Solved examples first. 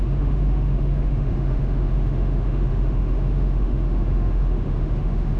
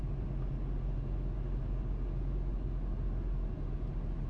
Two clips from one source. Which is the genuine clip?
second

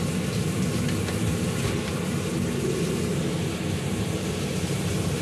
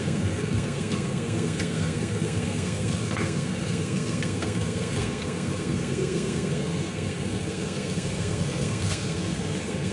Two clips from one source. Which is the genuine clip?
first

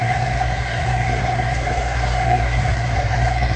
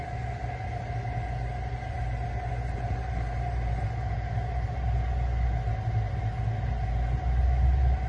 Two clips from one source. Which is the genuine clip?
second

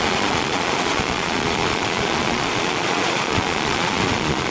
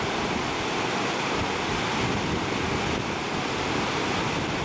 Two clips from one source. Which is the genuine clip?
second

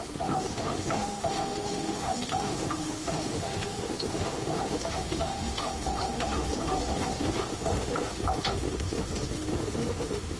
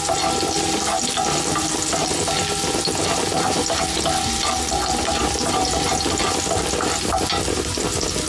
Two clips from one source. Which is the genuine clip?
second